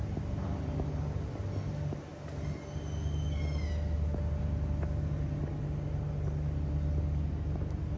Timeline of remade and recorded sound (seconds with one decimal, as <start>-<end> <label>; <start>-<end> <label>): 0.0-8.0 recorded